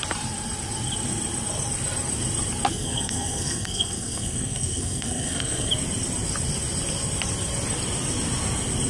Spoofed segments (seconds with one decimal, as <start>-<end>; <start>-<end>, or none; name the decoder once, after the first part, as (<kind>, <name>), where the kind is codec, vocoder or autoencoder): 2.7-5.7 (codec, SNAC)

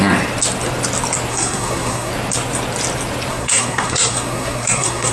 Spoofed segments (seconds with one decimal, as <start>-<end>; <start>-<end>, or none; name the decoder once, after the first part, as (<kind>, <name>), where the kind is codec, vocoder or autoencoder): 1.3-2.1 (codec, SNAC); 3.3-5.1

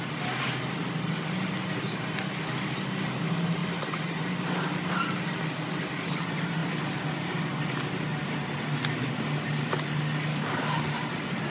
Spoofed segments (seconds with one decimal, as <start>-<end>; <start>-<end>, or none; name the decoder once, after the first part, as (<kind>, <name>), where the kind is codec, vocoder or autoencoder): 10.3-10.9 (codec, DAC)

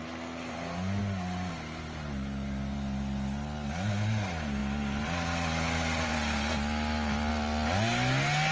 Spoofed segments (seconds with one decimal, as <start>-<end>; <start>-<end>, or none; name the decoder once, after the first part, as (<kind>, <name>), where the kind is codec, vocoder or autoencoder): 4.6-7.3 (vocoder, BigVGAN v2)

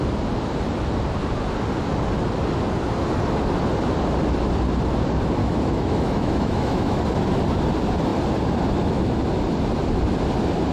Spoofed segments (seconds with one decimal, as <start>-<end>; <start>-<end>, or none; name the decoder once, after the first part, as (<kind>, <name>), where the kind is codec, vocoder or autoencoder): 5.4-7.0 (autoencoder, DAC-VAE)

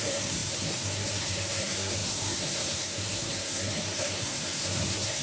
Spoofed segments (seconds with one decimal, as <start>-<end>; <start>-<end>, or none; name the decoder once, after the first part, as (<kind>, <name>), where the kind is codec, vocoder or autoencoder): 0.0-5.2 (codec, SNAC)

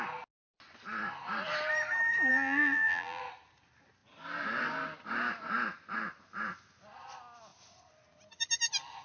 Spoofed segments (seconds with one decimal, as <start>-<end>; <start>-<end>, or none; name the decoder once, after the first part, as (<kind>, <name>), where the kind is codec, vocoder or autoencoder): 2.3-3.2 (vocoder, BigVGAN v2)

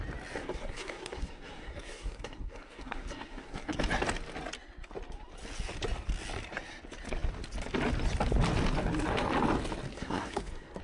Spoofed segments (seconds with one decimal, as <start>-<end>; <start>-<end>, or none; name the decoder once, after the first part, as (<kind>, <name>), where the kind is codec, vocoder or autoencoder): 0.4-3.8 (codec, SNAC); 9.9-10.8